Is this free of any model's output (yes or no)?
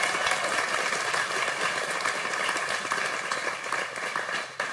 yes